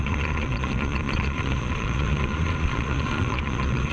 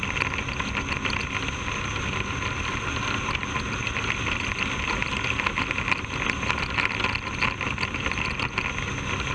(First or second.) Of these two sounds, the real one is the second